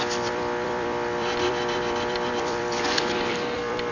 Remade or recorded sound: remade